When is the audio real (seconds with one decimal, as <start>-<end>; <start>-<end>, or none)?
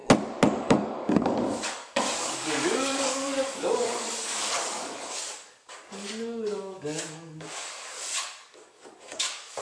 0.0-0.5